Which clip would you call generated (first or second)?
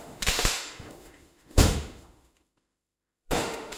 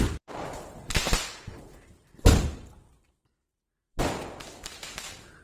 first